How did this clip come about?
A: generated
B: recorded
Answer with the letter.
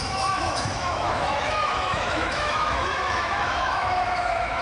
A